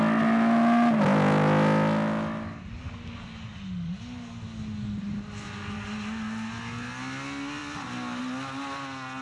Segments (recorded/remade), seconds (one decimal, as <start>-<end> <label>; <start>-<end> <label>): 0.0-9.2 recorded

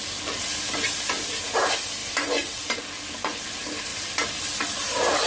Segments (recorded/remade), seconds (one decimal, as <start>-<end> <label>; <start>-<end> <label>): 0.0-2.0 recorded; 2.0-3.0 remade; 3.0-5.3 recorded

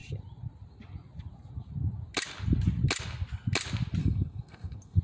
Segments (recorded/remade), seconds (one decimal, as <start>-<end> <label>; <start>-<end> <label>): 0.0-4.0 recorded; 4.0-5.0 remade

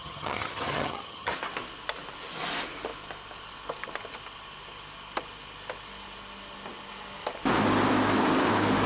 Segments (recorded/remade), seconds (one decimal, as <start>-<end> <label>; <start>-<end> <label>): 0.0-1.3 remade; 1.3-8.9 recorded

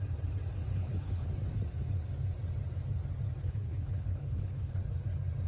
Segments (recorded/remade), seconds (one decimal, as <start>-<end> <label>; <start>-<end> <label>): 0.0-0.7 recorded; 0.7-1.3 remade; 1.3-3.4 recorded; 3.4-4.8 remade; 4.8-5.5 recorded

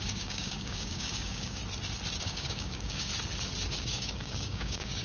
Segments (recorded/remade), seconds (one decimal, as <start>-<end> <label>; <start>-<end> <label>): 0.0-1.6 remade; 1.6-2.2 recorded; 2.2-3.1 remade; 3.1-3.7 recorded; 3.7-5.0 remade